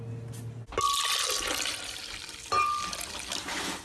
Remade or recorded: recorded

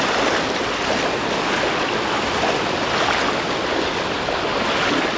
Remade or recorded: recorded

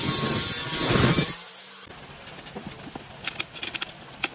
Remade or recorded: recorded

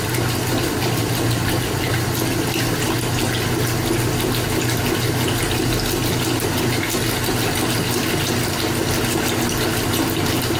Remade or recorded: recorded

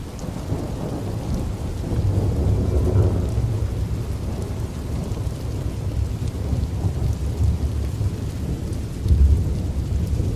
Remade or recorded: recorded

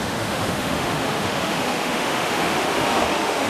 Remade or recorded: remade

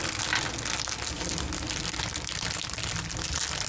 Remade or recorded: recorded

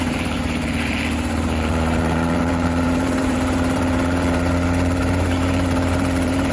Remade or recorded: remade